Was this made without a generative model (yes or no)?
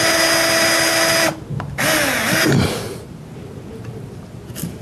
yes